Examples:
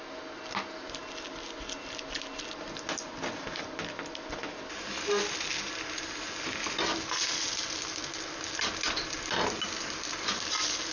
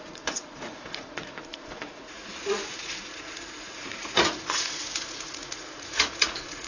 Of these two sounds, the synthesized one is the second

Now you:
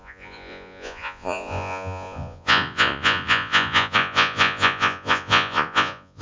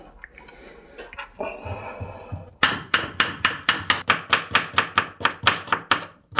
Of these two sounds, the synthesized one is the first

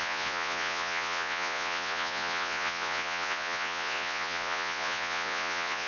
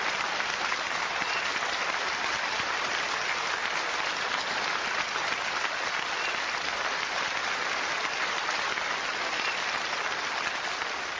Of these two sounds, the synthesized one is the first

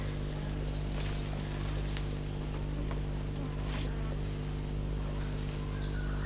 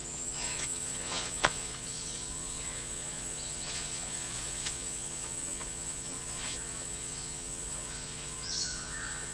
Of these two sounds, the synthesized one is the second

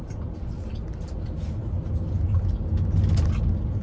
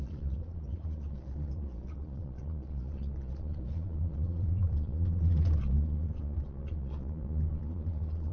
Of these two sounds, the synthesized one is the second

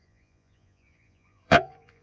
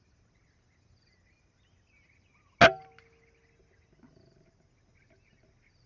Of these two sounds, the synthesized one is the first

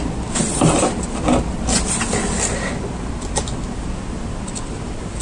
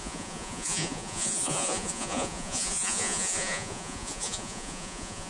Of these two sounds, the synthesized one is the second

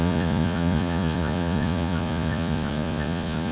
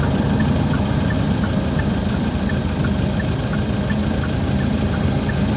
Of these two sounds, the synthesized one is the first